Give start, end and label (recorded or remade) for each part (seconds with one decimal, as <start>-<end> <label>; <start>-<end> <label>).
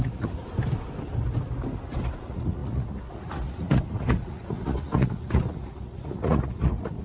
0.0-0.4 remade; 0.4-2.0 recorded; 2.0-7.0 remade